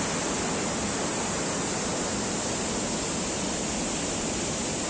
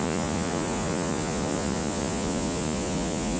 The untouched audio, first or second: first